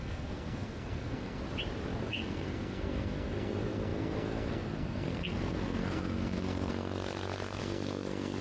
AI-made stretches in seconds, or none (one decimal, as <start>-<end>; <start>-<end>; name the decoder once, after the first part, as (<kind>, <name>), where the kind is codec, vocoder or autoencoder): 0.0-1.4 (codec, SNAC); 2.0-8.4